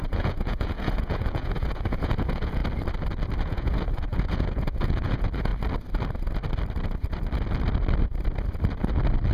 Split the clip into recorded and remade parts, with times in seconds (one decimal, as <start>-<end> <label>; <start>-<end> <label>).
0.0-2.6 remade; 2.6-3.4 recorded; 3.4-5.5 remade; 5.5-9.3 recorded